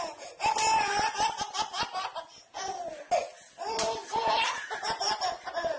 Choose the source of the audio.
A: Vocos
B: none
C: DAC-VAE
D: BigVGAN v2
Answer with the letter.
B